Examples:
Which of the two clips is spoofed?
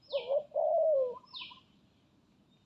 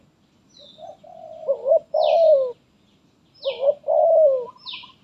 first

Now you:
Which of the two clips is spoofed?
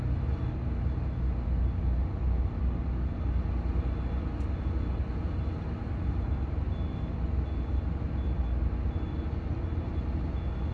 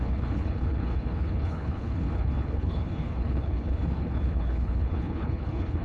second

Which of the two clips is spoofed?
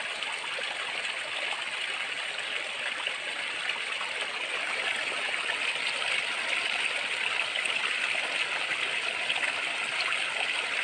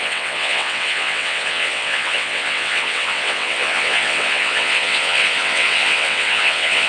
second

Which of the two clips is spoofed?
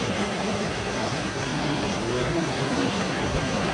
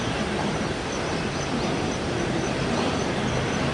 first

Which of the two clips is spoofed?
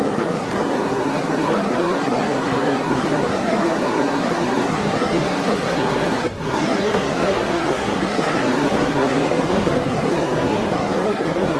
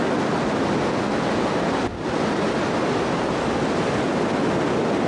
first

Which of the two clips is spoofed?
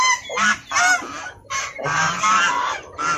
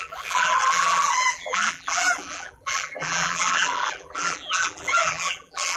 second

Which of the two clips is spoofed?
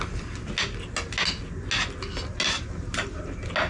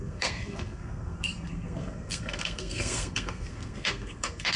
second